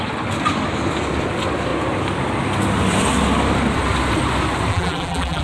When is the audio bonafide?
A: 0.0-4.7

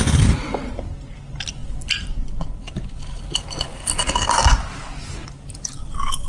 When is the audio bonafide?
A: 0.0-6.3

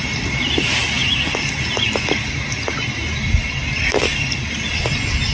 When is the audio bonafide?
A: 0.0-1.0; 1.5-3.8; 4.7-5.3